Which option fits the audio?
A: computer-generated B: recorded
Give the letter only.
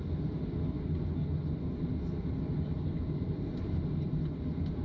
B